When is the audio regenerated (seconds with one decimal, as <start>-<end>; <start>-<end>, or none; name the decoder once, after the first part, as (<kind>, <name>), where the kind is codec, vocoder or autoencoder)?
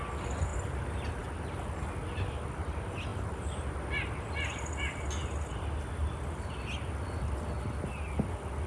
none